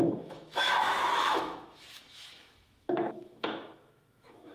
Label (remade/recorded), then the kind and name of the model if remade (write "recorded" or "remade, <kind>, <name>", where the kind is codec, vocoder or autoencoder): remade, autoencoder, DAC-VAE